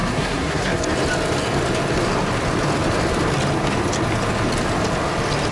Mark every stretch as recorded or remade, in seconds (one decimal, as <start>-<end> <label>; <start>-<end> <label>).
0.0-0.8 remade; 0.8-5.5 recorded